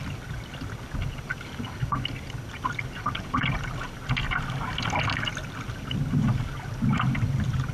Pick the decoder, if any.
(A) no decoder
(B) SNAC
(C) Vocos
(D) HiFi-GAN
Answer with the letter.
A